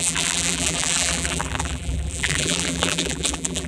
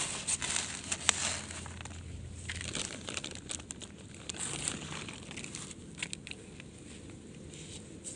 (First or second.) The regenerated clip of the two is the first